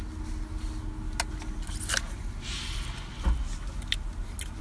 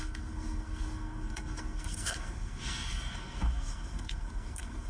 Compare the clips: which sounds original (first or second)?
first